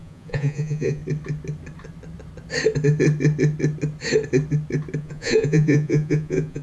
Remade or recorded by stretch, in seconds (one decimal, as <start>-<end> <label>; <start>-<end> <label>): 0.0-1.0 remade; 1.0-5.0 recorded; 5.0-6.6 remade